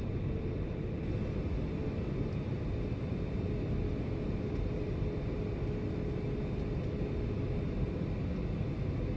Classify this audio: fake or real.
real